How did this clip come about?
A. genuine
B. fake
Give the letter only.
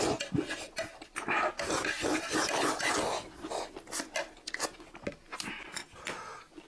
A